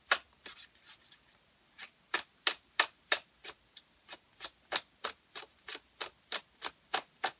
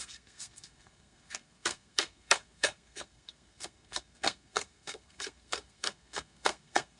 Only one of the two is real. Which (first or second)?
first